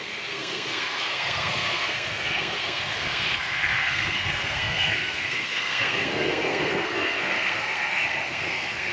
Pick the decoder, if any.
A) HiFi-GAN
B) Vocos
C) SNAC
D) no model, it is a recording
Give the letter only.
C